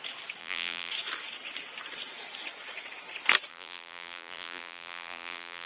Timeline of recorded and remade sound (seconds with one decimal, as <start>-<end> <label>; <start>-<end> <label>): 0.0-0.4 recorded; 0.4-0.9 remade; 0.9-3.5 recorded; 3.5-5.7 remade